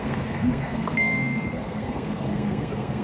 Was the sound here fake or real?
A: fake